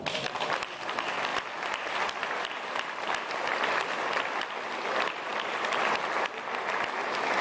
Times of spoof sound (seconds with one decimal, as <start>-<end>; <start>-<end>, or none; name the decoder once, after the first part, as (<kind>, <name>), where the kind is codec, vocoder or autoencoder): none